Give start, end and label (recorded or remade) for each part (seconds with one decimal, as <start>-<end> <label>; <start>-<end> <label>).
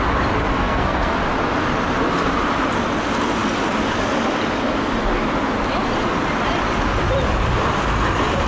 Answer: 0.0-0.5 recorded; 0.5-1.1 remade; 1.1-8.5 recorded